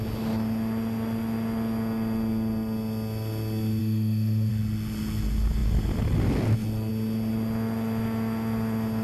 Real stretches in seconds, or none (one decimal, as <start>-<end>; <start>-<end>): 0.0-3.8; 4.5-9.0